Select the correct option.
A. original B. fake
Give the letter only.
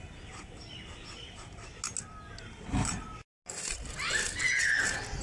A